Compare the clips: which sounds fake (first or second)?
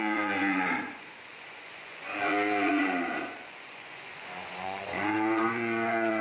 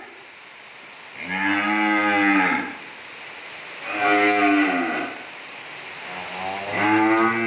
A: first